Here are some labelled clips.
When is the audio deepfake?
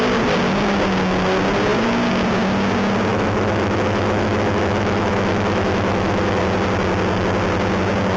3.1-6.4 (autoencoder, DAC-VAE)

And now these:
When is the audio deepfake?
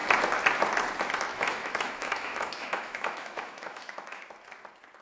1.3-4.3 (autoencoder, DAC-VAE)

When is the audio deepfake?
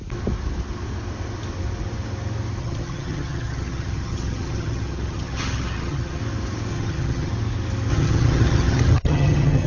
2.6-6.2 (vocoder, HiFi-GAN); 6.7-7.3; 7.9-9.7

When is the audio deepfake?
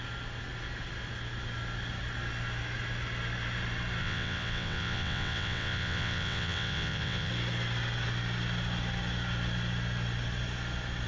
4.0-7.3 (vocoder, WaveNeXt)